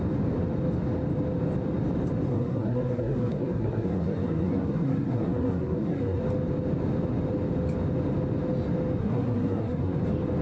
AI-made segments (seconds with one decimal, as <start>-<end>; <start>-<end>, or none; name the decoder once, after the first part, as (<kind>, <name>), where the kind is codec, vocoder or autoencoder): 2.3-6.2 (codec, SNAC); 9.0-10.0